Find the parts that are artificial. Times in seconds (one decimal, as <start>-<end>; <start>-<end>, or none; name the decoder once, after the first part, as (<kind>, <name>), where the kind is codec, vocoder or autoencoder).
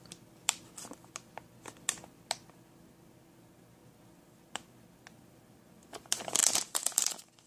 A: 6.4-7.1 (vocoder, BigVGAN v2)